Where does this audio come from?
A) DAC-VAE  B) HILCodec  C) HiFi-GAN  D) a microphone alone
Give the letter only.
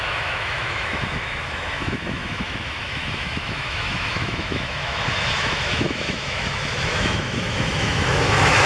A